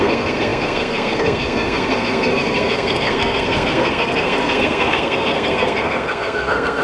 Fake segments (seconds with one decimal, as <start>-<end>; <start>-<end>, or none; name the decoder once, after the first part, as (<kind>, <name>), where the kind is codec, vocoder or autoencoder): 0.0-6.8 (codec, SNAC)